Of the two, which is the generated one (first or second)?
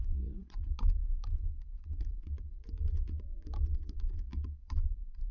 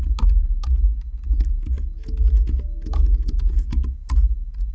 first